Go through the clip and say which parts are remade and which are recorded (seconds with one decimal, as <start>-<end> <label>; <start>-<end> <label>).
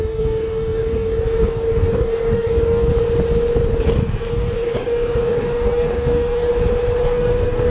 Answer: 0.0-2.9 remade; 2.9-4.3 recorded; 4.3-6.5 remade; 6.5-7.0 recorded; 7.0-7.7 remade